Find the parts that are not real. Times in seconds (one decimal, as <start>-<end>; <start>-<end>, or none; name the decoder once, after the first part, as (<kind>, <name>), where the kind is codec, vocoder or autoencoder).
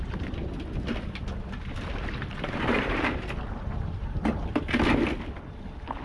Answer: 2.2-4.2 (vocoder, BigVGAN v2)